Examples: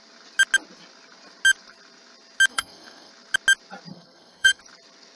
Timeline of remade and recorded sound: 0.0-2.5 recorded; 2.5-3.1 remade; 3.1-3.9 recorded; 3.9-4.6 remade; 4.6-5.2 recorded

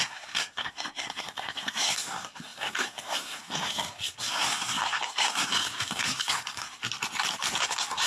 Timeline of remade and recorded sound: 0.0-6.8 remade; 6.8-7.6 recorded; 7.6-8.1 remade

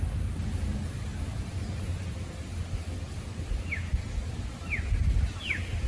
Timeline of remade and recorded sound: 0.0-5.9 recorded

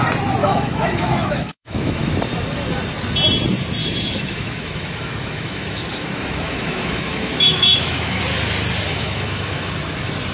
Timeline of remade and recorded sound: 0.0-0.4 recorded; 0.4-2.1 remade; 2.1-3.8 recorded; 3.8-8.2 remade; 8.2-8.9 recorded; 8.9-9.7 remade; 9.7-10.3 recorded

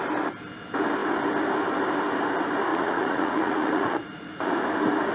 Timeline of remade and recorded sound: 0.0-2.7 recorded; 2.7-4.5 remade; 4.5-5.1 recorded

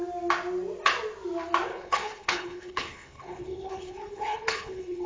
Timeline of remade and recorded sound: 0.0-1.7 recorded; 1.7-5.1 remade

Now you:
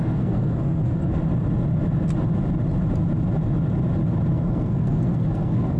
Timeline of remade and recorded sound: 0.0-1.2 remade; 1.2-4.3 recorded; 4.3-5.8 remade